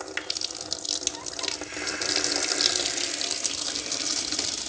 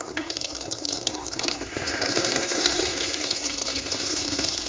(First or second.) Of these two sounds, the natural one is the first